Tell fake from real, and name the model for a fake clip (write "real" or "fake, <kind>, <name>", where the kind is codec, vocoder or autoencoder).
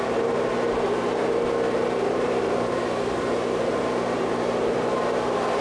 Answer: fake, vocoder, BigVGAN v2